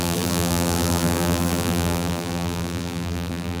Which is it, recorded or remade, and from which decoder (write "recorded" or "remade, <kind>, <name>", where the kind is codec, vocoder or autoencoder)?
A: remade, vocoder, BigVGAN v2